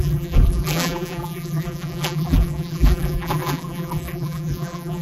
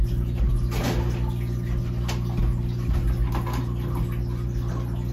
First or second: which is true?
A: second